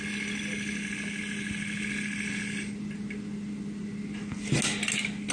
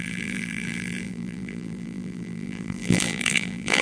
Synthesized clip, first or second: second